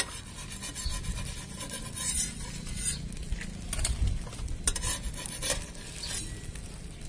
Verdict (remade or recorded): recorded